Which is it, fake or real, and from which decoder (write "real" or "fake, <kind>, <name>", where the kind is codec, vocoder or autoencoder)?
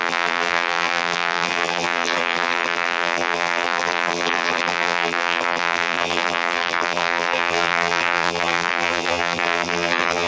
fake, vocoder, BigVGAN v2